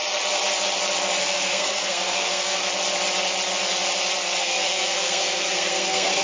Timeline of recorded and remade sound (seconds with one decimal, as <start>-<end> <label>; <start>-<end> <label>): 0.0-1.2 recorded; 1.2-2.6 remade; 2.6-4.4 recorded; 4.4-6.2 remade